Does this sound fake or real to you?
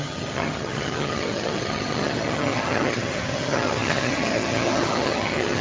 fake